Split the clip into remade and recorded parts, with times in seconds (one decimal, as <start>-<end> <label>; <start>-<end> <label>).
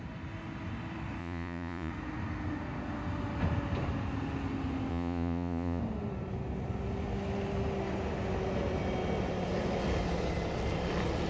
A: 0.0-1.2 recorded; 1.2-1.9 remade; 1.9-4.9 recorded; 4.9-5.8 remade; 5.8-11.3 recorded